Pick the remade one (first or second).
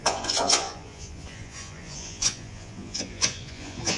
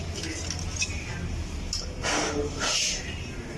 first